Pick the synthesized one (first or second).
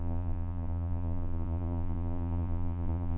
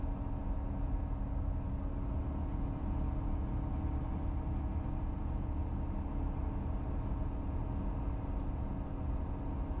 first